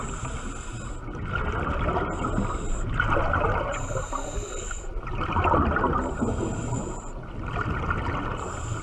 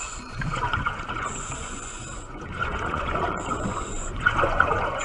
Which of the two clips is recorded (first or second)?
first